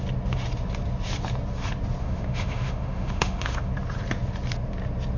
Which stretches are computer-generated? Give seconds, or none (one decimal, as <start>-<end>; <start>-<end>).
2.0-3.7

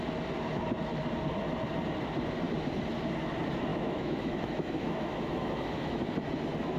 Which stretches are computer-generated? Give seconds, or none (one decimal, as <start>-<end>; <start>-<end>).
3.7-6.0